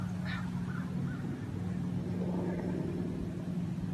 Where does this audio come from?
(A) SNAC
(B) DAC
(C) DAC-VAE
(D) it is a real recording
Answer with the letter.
D